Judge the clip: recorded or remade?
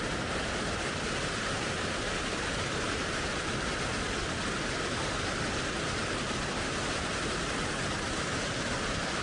recorded